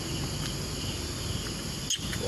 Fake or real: real